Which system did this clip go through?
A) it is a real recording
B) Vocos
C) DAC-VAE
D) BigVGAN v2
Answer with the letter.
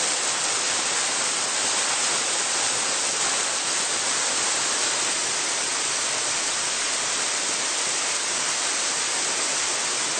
A